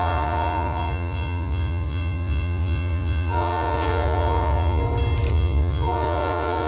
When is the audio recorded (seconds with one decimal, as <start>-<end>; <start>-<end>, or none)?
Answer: 4.8-5.3